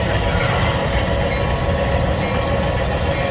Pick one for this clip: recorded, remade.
recorded